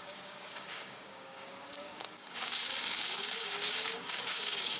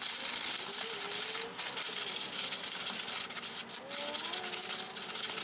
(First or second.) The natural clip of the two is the second